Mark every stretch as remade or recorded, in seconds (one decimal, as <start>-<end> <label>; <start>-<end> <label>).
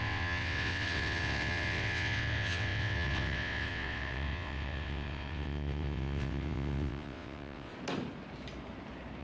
0.0-7.7 remade; 7.7-9.2 recorded